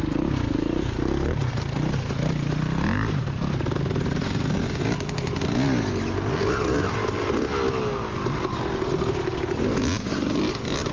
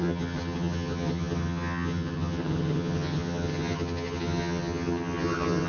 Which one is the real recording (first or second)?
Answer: first